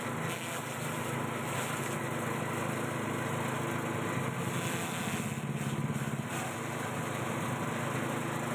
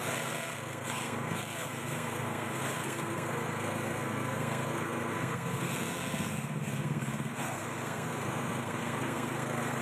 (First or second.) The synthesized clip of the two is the second